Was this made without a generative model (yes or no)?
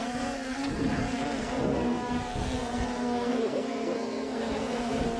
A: no